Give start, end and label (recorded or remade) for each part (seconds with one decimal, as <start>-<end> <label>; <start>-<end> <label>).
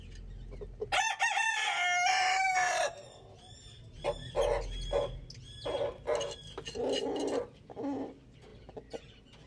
0.0-9.5 recorded